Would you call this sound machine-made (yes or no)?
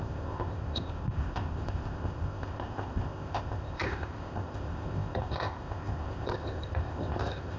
yes